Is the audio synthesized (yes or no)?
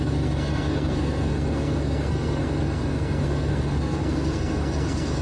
yes